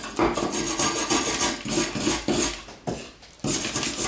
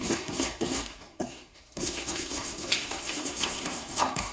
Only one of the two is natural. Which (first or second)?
first